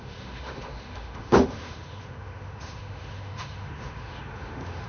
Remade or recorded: remade